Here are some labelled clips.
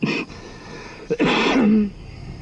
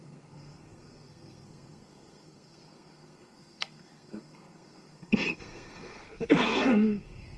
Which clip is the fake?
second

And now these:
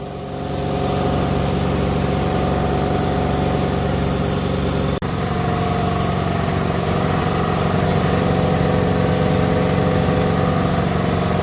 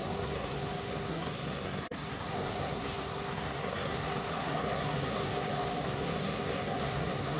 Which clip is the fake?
second